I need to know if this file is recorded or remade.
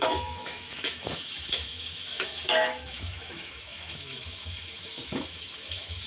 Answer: remade